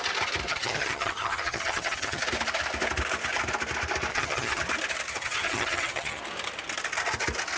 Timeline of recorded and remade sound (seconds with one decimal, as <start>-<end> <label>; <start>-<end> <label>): 0.0-0.5 recorded; 0.5-2.2 remade; 2.2-4.1 recorded; 4.1-4.6 remade; 4.6-5.1 recorded; 5.1-6.2 remade; 6.2-7.6 recorded